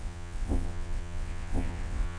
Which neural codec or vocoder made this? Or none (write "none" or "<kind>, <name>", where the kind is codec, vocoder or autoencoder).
vocoder, WaveNeXt